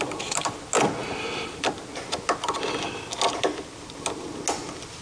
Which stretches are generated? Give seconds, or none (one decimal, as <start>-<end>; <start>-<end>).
none